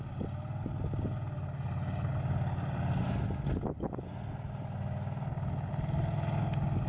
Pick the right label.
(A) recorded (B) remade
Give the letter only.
A